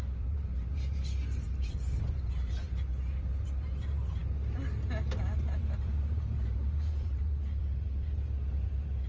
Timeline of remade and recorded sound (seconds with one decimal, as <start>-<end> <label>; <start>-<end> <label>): 0.0-4.2 remade; 4.2-5.2 recorded; 5.2-9.1 remade